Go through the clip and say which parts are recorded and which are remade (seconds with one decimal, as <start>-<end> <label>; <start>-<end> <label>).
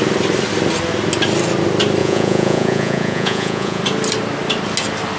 0.0-2.0 recorded; 2.0-3.8 remade; 3.8-5.2 recorded